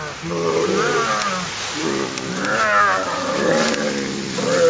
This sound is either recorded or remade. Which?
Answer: recorded